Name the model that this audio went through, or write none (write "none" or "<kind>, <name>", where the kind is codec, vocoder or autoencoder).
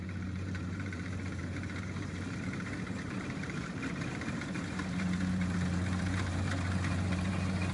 vocoder, BigVGAN v2